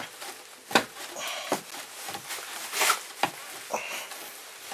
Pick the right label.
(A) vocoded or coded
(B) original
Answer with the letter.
B